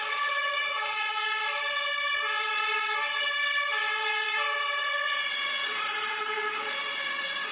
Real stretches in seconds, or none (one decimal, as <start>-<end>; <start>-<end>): 1.2-4.8